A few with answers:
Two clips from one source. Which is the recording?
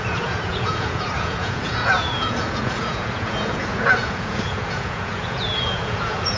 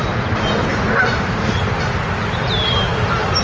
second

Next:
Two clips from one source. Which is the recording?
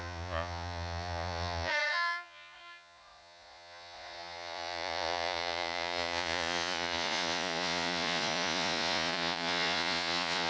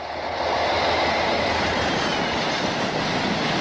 second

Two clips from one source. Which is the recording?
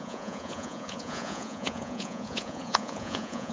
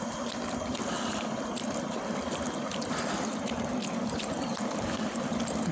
second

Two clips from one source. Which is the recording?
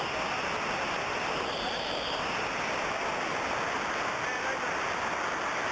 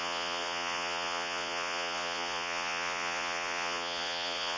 first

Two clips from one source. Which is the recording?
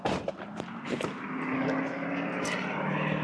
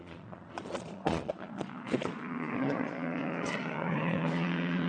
first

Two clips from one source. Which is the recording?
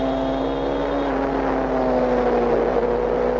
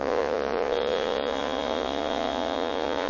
first